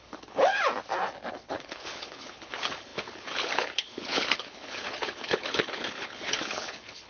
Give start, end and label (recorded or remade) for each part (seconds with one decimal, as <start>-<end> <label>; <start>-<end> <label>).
0.0-0.5 remade; 0.5-1.3 recorded; 1.3-7.1 remade